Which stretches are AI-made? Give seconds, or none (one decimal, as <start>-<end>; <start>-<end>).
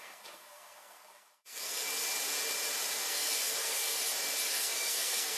0.0-1.9; 2.9-4.0; 4.5-5.4